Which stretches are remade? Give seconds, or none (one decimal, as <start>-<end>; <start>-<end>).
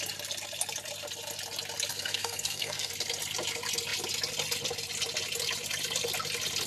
1.9-2.9